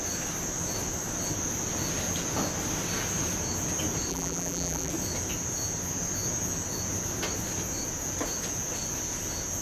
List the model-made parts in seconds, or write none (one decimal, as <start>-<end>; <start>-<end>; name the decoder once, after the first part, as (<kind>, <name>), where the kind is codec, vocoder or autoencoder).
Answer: 4.1-4.9 (vocoder, BigVGAN v2)